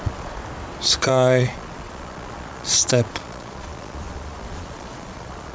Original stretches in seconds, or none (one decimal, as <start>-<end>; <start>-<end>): 0.4-1.0